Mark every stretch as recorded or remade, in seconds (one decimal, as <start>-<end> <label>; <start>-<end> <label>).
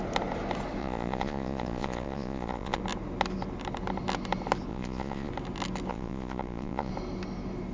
0.0-0.8 recorded; 0.8-2.8 remade; 2.8-4.7 recorded; 4.7-5.3 remade; 5.3-5.9 recorded; 5.9-6.9 remade; 6.9-7.7 recorded